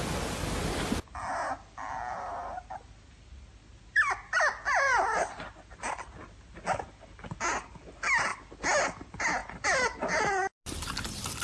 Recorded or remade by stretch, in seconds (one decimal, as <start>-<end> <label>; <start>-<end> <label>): 0.0-11.4 recorded